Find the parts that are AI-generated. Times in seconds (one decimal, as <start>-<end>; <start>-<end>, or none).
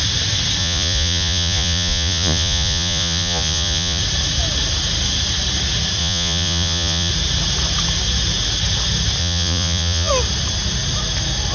0.6-4.0; 6.0-7.1; 9.2-10.1